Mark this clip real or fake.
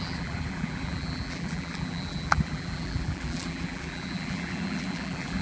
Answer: fake